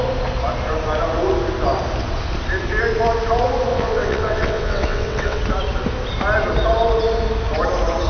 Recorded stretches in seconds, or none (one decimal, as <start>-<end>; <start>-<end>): 0.0-3.7; 5.4-8.1